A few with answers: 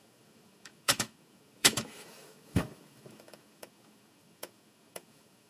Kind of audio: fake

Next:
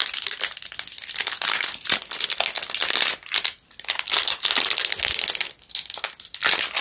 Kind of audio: real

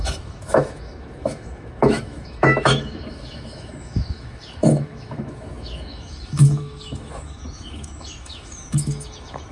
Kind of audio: fake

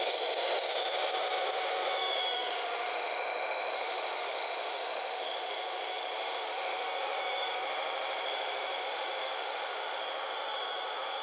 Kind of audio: fake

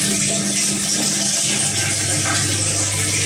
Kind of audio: real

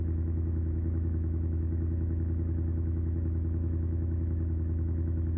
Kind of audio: fake